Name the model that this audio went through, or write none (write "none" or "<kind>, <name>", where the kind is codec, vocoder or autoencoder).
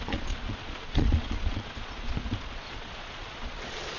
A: vocoder, Vocos